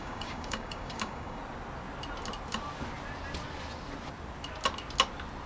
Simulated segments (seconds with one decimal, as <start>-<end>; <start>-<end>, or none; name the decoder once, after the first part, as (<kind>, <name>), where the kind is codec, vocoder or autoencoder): 0.0-1.4 (codec, DAC)